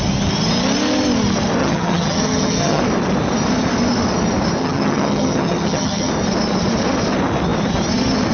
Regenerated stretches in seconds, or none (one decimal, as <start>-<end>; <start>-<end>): 1.6-2.8; 4.6-6.1